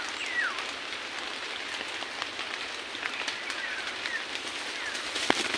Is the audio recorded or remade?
recorded